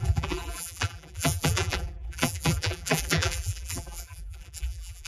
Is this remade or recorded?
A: remade